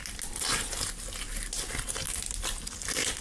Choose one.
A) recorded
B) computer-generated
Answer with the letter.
A